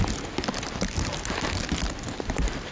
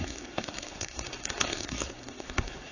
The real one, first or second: first